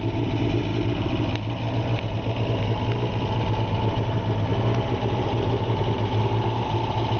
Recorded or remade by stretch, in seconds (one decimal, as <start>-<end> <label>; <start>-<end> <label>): 0.0-7.2 recorded